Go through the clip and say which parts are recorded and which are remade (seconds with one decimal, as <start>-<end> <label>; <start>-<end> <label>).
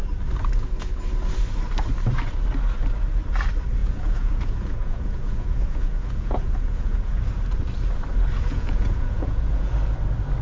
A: 0.0-3.8 recorded; 3.8-7.2 remade; 7.2-8.5 recorded; 8.5-9.7 remade; 9.7-10.4 recorded